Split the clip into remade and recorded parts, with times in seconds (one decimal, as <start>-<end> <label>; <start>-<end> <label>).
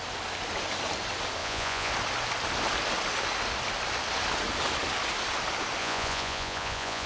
0.0-1.4 recorded; 1.4-1.9 remade; 1.9-5.8 recorded; 5.8-7.1 remade